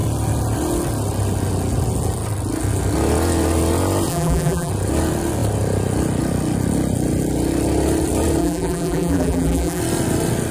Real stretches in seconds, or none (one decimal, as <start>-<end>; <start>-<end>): 0.0-4.1; 4.7-8.4; 9.8-10.5